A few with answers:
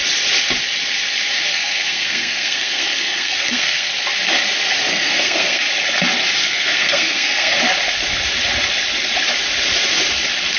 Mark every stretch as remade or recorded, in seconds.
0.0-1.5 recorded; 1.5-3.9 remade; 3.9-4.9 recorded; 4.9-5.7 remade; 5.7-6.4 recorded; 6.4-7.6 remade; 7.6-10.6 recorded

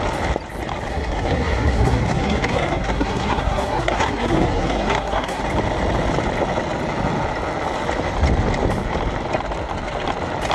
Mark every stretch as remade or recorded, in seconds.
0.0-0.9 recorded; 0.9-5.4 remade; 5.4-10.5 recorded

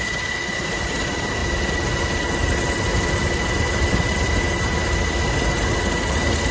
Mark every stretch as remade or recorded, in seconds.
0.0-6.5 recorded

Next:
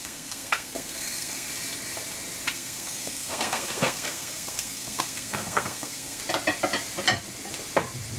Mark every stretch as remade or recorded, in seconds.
0.0-1.5 remade; 1.5-2.5 recorded; 2.5-6.2 remade; 6.2-8.2 recorded

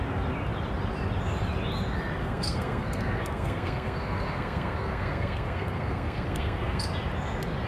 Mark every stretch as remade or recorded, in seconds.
0.0-2.2 recorded; 2.2-6.8 remade; 6.8-7.7 recorded